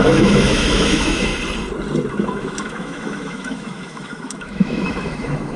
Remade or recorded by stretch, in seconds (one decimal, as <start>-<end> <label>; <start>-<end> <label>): 0.0-1.3 remade; 1.3-2.1 recorded; 2.1-5.6 remade

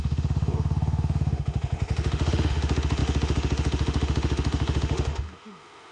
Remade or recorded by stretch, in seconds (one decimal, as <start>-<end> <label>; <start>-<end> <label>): 0.0-5.9 remade

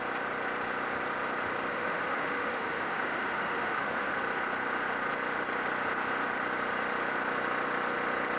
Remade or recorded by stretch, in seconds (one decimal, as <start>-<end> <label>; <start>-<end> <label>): 0.0-1.7 recorded; 1.7-4.2 remade; 4.2-8.4 recorded

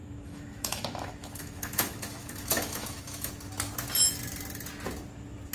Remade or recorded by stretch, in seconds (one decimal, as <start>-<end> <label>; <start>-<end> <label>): 0.0-3.3 remade; 3.3-5.5 recorded

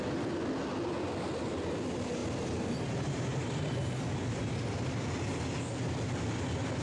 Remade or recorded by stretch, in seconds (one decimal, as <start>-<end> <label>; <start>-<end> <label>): 0.0-6.8 recorded

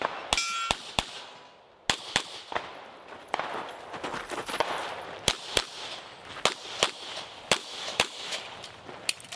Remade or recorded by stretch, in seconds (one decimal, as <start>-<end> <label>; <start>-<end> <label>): 0.0-7.6 recorded; 7.6-8.4 remade; 8.4-9.4 recorded

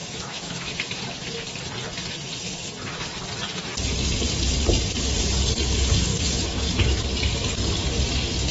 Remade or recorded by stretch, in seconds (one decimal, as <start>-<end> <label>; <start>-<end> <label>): 0.0-0.7 remade; 0.7-6.1 recorded; 6.1-7.0 remade; 7.0-8.5 recorded